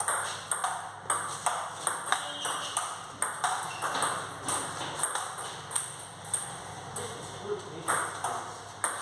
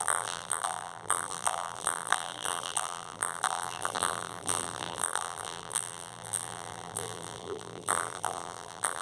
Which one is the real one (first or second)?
first